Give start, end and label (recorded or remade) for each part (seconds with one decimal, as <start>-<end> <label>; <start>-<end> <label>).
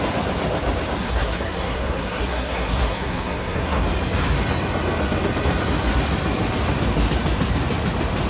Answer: 0.0-1.0 recorded; 1.0-3.8 remade; 3.8-8.3 recorded